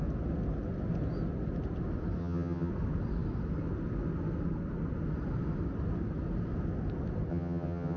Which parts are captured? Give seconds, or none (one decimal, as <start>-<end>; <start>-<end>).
0.0-2.2; 2.7-7.3